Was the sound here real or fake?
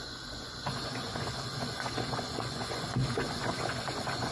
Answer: fake